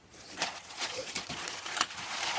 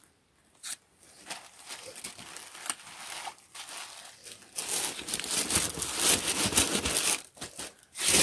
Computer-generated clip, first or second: first